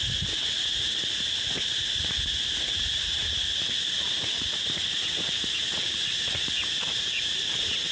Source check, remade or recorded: remade